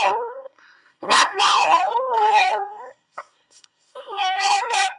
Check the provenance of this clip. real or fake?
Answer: fake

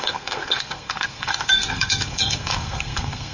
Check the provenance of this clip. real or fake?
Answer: fake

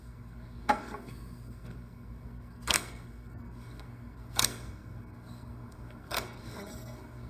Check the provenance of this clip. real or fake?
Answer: fake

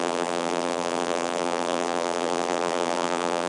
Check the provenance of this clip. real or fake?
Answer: fake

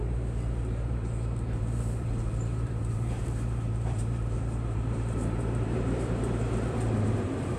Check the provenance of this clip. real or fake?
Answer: fake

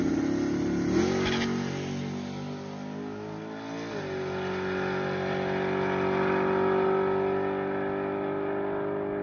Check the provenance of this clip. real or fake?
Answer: real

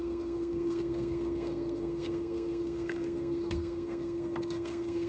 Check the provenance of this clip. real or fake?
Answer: fake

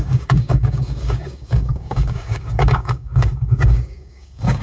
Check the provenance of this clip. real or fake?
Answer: fake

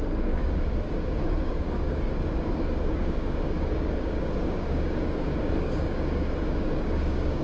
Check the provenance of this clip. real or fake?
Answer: fake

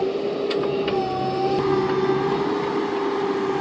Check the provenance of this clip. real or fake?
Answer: real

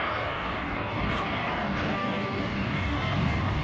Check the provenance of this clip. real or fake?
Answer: fake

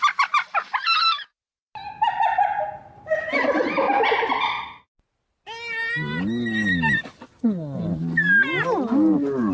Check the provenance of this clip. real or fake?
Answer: real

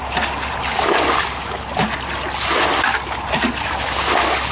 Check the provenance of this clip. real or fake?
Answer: real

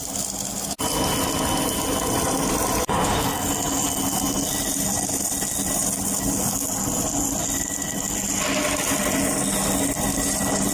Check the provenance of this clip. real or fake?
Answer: real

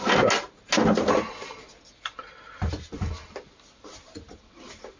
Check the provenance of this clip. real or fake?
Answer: real